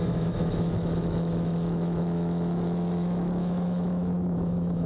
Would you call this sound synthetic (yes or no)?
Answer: yes